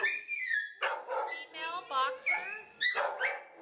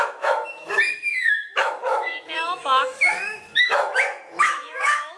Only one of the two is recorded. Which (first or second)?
first